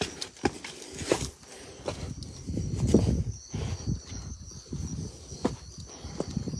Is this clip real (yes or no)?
yes